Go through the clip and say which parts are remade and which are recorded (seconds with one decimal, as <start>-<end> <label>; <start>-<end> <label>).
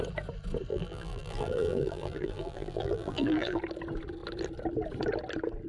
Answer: 0.0-0.7 recorded; 0.7-3.6 remade; 3.6-5.7 recorded